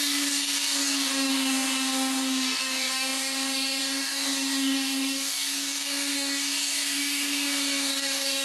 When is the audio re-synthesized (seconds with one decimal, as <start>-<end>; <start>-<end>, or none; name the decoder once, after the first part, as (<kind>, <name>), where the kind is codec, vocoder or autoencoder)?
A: 0.0-8.4 (codec, DAC)